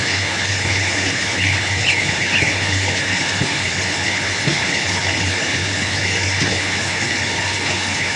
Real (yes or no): no